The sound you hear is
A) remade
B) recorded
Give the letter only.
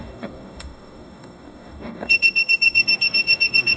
A